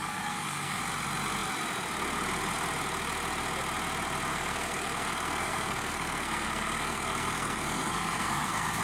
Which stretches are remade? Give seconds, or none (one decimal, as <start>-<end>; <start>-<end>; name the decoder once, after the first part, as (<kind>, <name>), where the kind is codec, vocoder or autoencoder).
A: 0.0-0.8 (codec, SNAC); 4.3-8.8